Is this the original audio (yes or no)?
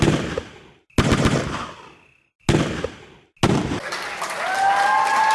yes